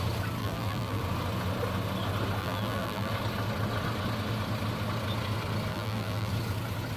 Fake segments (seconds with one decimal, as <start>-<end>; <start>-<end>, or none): 0.4-1.0; 2.4-3.1; 5.7-6.3

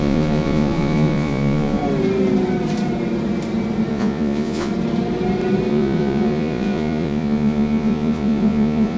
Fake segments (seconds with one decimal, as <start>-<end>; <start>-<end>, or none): 0.0-1.8; 3.9-4.7; 5.7-9.0

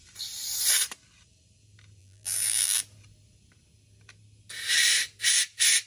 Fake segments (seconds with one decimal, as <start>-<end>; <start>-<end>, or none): 2.0-2.8